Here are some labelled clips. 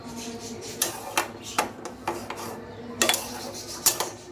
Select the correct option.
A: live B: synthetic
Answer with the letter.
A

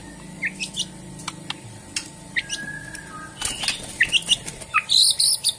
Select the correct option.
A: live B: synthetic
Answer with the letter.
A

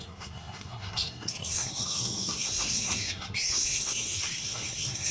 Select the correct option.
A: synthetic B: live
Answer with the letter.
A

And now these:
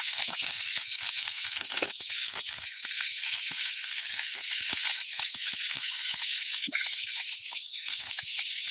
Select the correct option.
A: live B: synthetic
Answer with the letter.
B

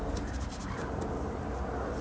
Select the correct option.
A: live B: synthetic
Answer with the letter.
A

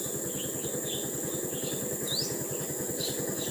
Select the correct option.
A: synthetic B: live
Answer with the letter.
B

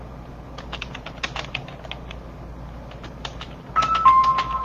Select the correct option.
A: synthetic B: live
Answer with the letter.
B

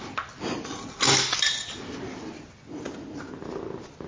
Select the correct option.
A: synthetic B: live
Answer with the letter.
B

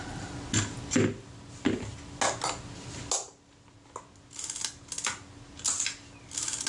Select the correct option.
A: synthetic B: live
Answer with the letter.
B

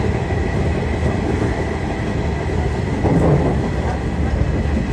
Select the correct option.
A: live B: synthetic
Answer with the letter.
A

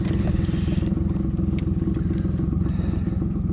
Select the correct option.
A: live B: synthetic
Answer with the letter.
A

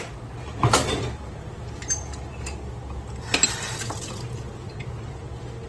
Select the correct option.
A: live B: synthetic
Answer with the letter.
A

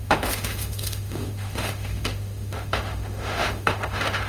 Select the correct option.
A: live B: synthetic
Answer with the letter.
B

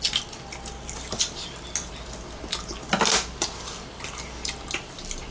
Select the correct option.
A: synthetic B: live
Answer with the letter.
B